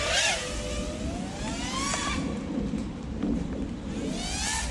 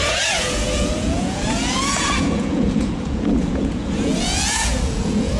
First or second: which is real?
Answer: first